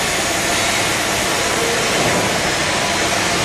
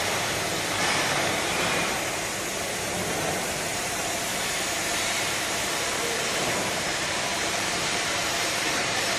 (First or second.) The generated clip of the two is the second